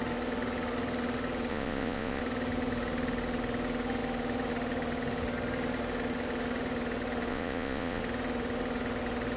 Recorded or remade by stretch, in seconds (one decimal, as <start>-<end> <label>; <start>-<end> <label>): 0.0-1.5 recorded; 1.5-2.2 remade; 2.2-7.3 recorded; 7.3-8.0 remade; 8.0-9.4 recorded